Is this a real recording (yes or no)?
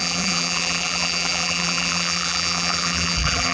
no